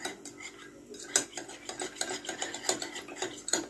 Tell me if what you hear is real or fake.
real